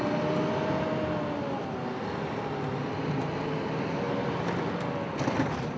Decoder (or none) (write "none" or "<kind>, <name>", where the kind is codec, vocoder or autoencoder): none